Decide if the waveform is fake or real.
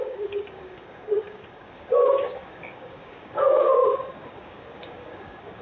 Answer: fake